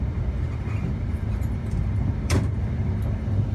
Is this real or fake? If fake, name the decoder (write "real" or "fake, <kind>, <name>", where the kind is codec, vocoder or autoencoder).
fake, vocoder, BigVGAN v2